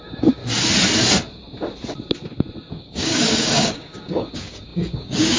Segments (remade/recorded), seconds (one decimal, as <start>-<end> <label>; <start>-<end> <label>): 0.0-0.4 remade; 0.4-2.7 recorded; 2.7-5.4 remade